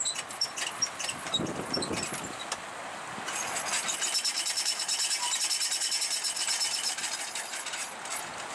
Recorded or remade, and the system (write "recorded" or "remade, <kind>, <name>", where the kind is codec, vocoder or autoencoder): recorded